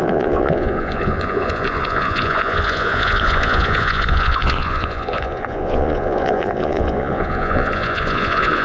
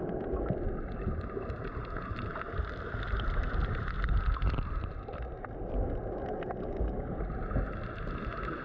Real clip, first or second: second